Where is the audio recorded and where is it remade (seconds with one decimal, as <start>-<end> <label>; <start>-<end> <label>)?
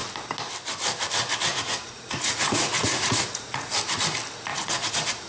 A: 0.0-1.5 recorded; 1.5-3.7 remade; 3.7-4.5 recorded; 4.5-5.3 remade